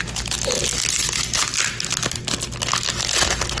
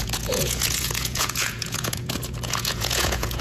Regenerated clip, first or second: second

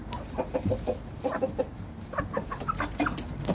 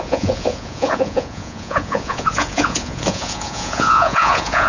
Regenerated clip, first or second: second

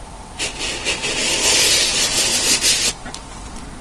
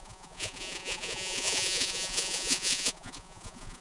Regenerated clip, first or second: second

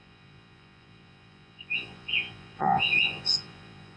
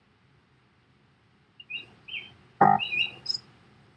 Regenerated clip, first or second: first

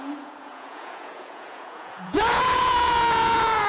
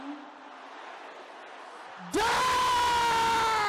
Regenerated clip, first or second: first